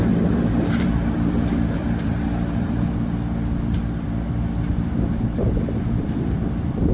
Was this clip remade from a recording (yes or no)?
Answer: yes